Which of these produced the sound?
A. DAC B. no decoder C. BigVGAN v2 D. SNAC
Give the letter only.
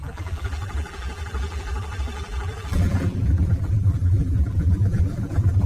C